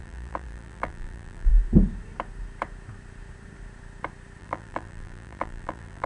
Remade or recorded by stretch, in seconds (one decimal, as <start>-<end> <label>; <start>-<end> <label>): 0.0-1.5 remade; 1.5-4.4 recorded; 4.4-6.1 remade